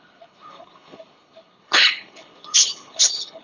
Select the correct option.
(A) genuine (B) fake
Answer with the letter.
B